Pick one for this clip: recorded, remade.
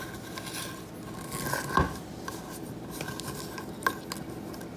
recorded